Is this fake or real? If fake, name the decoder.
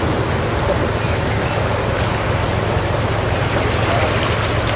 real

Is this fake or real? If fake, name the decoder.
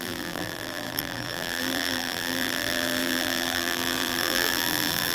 fake, vocoder, BigVGAN v2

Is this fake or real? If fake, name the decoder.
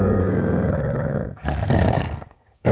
fake, codec, SNAC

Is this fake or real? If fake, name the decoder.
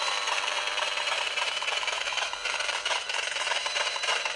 fake, vocoder, BigVGAN v2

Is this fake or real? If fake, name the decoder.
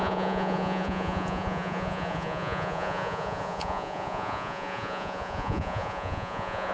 fake, vocoder, Vocos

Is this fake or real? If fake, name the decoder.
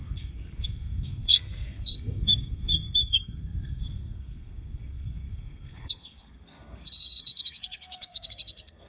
fake, codec, SNAC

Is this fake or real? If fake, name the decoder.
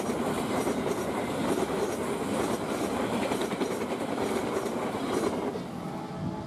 real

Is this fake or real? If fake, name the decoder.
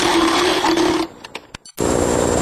real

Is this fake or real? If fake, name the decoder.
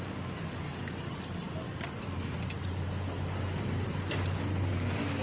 real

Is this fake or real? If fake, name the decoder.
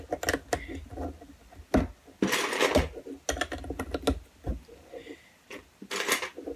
real